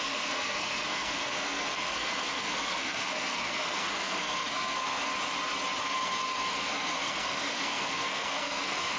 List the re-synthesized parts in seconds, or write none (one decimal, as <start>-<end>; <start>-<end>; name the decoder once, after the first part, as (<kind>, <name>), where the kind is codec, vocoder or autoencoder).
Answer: 0.0-5.1 (codec, SNAC); 5.8-9.0